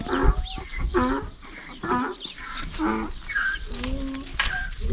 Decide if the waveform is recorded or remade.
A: recorded